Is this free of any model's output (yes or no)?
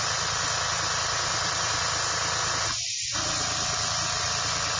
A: yes